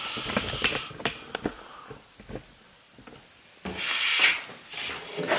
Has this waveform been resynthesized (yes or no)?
no